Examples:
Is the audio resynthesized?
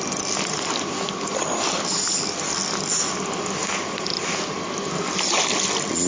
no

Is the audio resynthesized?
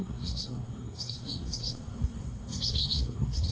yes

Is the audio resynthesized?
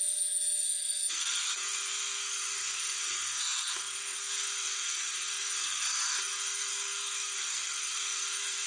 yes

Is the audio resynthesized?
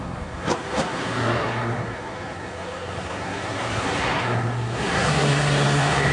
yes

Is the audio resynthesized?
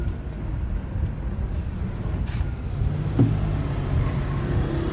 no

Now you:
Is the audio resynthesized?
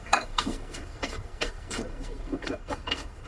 yes